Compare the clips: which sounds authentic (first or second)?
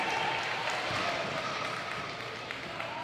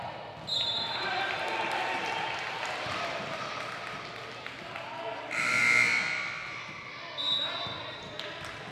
second